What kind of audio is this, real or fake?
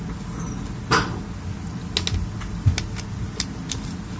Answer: real